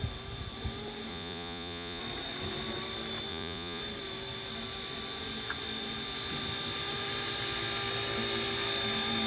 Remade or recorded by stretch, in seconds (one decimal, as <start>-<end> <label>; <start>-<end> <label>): 0.0-1.1 recorded; 1.1-2.0 remade; 2.0-3.3 recorded; 3.3-3.8 remade; 3.8-9.3 recorded

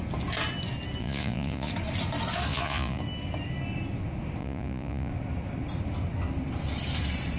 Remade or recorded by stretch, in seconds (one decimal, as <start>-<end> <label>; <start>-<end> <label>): 0.0-1.0 recorded; 1.0-1.7 remade; 1.7-2.5 recorded; 2.5-3.0 remade; 3.0-4.4 recorded; 4.4-5.1 remade; 5.1-7.4 recorded

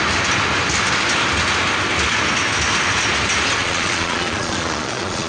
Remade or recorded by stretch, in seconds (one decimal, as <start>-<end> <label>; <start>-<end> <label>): 0.0-3.6 recorded; 3.6-5.3 remade

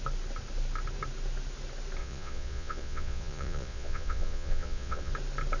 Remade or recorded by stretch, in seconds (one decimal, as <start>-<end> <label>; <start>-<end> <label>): 0.0-2.0 recorded; 2.0-5.1 remade; 5.1-5.6 recorded

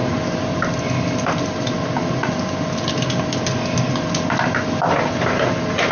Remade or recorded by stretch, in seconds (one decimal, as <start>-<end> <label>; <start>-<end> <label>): 0.0-5.9 recorded

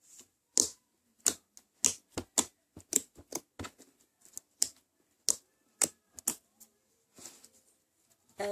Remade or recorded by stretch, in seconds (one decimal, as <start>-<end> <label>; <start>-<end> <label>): 0.0-8.5 recorded

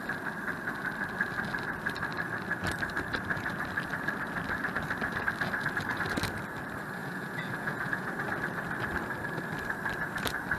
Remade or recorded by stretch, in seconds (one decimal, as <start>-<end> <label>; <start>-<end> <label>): 0.0-7.0 recorded; 7.0-8.1 remade; 8.1-10.6 recorded